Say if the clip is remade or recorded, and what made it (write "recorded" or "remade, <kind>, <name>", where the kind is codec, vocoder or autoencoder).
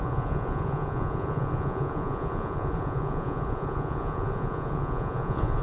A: remade, vocoder, Vocos